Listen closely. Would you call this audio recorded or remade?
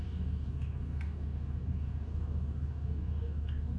remade